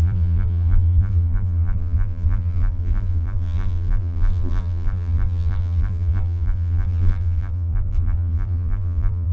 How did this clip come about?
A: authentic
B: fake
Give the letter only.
B